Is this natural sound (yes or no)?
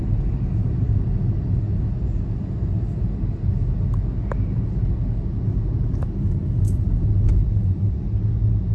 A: yes